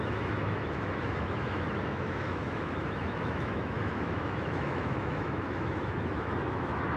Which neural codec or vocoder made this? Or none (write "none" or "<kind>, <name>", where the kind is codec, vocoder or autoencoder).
autoencoder, DAC-VAE